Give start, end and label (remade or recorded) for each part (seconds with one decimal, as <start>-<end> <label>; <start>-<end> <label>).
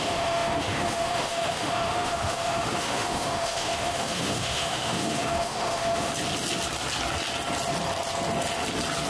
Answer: 0.0-6.1 remade; 6.1-9.1 recorded